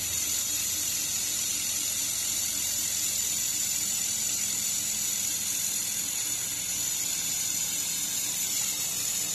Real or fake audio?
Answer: fake